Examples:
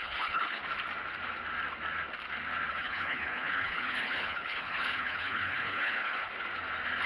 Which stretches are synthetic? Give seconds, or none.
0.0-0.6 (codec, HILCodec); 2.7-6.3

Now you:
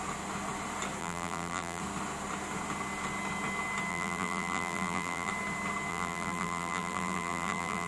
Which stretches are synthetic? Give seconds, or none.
1.0-1.8 (vocoder, BigVGAN v2); 3.9-5.3; 5.9-7.9

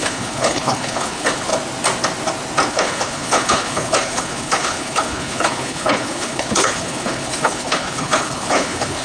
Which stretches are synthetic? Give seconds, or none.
0.0-1.5 (codec, HILCodec); 2.7-9.0

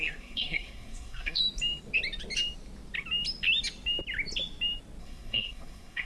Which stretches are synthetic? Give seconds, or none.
0.0-1.4 (codec, SNAC); 5.0-6.0

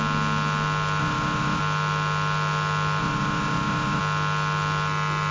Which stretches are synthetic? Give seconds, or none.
1.0-1.6 (autoencoder, DAC-VAE); 3.0-4.0

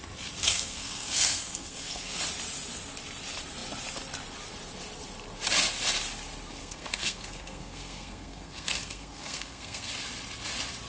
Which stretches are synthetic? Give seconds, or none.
0.4-2.2 (codec, SNAC); 6.6-9.9